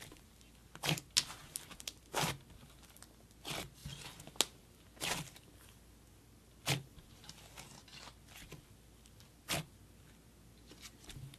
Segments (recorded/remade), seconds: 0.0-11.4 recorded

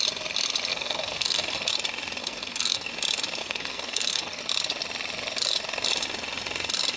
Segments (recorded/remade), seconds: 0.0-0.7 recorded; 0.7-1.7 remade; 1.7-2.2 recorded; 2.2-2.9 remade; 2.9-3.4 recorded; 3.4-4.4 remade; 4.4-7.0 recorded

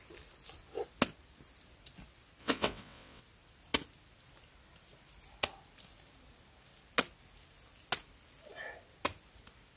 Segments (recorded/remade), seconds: 0.0-2.4 recorded; 2.4-3.2 remade; 3.2-9.8 recorded

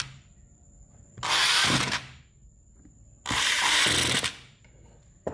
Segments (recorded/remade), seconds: 0.0-1.4 recorded; 1.4-2.2 remade; 2.2-5.3 recorded

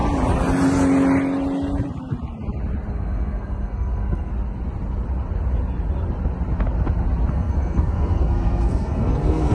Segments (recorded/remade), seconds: 0.0-2.9 recorded; 2.9-4.3 remade; 4.3-7.3 recorded; 7.3-9.5 remade